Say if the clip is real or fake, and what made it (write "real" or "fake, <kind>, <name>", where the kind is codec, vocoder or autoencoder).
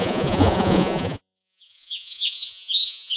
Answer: fake, vocoder, Vocos